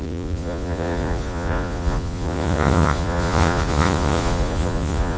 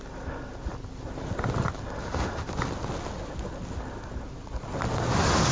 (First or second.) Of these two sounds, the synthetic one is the first